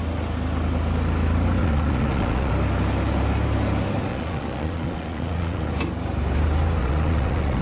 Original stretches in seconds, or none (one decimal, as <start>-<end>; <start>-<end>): 0.0-1.6; 2.5-4.1; 5.7-6.8